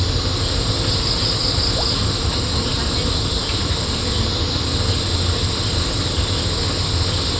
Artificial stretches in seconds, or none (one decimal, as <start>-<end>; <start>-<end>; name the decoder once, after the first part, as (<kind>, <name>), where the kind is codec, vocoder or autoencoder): none